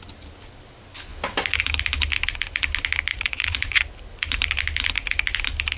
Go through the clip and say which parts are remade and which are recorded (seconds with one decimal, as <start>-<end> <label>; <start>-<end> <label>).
0.0-3.1 recorded; 3.1-3.8 remade; 3.8-5.8 recorded